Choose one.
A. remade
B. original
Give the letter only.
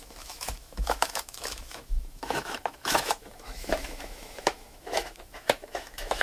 A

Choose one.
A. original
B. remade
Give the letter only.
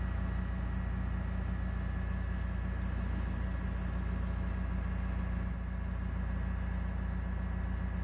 A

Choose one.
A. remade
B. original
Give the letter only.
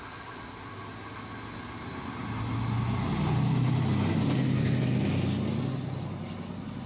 B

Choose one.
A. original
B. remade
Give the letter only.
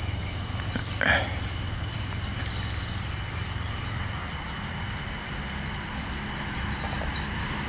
A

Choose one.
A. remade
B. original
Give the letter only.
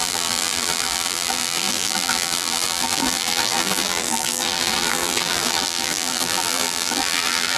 A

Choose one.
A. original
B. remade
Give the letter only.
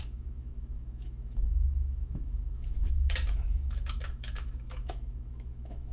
B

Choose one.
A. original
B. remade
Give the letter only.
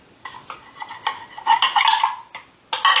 A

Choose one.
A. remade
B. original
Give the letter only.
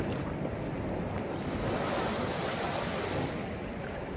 B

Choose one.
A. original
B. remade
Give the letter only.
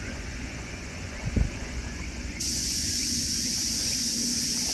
B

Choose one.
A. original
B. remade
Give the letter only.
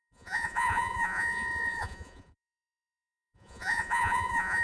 B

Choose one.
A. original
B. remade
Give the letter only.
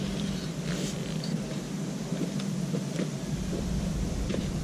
B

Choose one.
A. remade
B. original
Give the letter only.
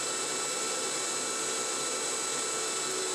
B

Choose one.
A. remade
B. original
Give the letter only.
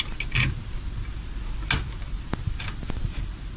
B